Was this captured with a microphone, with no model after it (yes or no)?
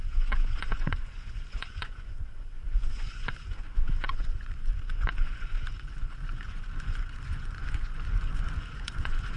no